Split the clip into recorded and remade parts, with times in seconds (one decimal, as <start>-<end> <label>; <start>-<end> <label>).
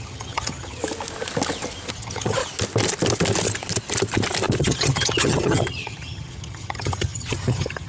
0.0-0.8 remade; 0.8-1.9 recorded; 1.9-2.4 remade; 2.4-4.6 recorded; 4.6-7.9 remade